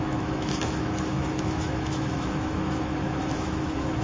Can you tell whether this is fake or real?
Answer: fake